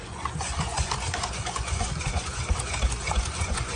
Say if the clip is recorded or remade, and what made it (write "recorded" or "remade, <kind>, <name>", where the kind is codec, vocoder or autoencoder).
remade, vocoder, Vocos